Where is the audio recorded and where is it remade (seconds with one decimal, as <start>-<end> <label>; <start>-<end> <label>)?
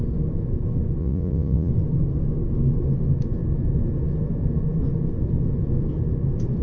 0.0-1.0 recorded; 1.0-1.7 remade; 1.7-6.6 recorded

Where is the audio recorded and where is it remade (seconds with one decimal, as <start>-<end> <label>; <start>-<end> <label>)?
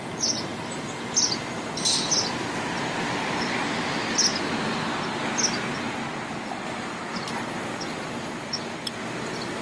0.0-9.6 recorded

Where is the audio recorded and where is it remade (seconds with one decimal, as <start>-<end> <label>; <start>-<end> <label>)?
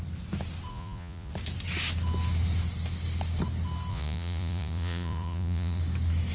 0.0-0.7 recorded; 0.7-1.3 remade; 1.3-3.9 recorded; 3.9-5.8 remade; 5.8-6.3 recorded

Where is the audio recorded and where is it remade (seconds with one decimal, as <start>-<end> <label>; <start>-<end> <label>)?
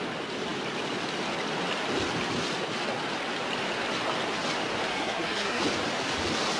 0.0-4.9 recorded; 4.9-5.6 remade; 5.6-6.6 recorded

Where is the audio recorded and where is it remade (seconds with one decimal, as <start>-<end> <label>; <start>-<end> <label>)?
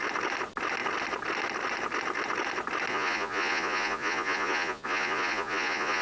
0.0-2.9 recorded; 2.9-6.0 remade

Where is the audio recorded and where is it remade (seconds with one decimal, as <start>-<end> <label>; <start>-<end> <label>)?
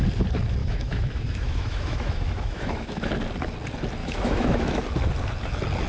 0.0-0.6 recorded; 0.6-3.1 remade; 3.1-4.0 recorded; 4.0-4.8 remade; 4.8-5.9 recorded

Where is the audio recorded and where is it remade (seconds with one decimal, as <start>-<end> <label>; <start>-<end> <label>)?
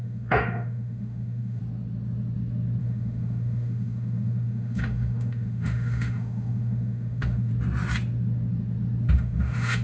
0.0-1.6 remade; 1.6-2.8 recorded; 2.8-7.5 remade; 7.5-9.1 recorded; 9.1-9.8 remade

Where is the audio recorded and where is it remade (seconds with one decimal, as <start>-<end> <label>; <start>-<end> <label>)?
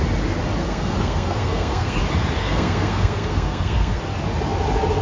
0.0-0.6 recorded; 0.6-2.0 remade; 2.0-2.4 recorded; 2.4-4.0 remade; 4.0-5.0 recorded